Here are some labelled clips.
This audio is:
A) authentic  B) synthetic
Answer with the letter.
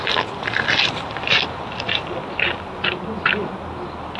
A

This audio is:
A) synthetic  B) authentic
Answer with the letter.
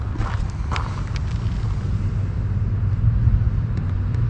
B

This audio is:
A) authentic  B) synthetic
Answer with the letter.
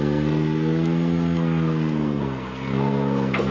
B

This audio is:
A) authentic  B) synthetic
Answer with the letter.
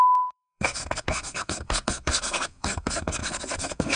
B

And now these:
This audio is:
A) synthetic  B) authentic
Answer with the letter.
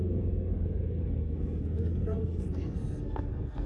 A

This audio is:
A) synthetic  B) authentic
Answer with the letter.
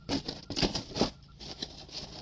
B